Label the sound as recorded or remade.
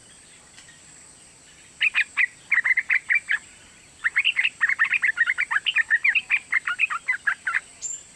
recorded